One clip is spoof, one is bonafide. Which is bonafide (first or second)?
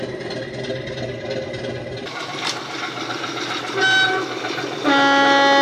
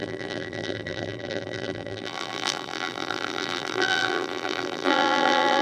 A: first